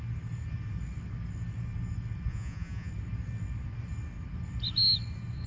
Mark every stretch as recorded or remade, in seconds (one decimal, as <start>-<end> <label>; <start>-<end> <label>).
0.0-2.3 recorded; 2.3-2.9 remade; 2.9-5.5 recorded